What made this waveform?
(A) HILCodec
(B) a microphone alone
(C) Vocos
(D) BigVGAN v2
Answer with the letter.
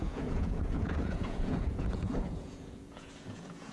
C